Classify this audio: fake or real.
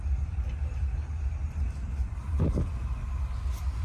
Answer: real